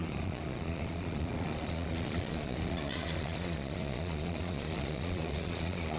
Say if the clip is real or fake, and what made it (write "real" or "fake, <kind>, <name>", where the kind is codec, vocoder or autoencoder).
fake, vocoder, Vocos